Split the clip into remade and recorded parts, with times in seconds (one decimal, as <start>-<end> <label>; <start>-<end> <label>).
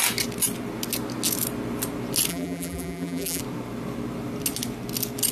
0.0-2.3 recorded; 2.3-3.4 remade; 3.4-5.3 recorded